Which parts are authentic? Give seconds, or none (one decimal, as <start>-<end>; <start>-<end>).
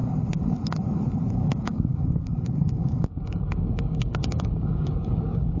0.0-1.3